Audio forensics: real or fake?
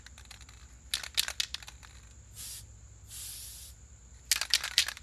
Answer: real